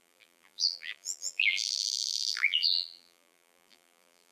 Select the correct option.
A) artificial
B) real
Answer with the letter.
A